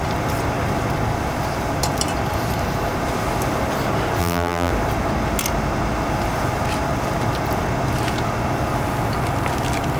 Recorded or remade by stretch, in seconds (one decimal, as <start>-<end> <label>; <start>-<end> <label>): 0.0-4.2 recorded; 4.2-4.7 remade; 4.7-10.0 recorded